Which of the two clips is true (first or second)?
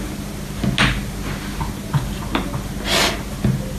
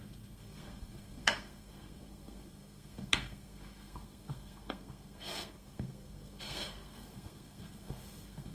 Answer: first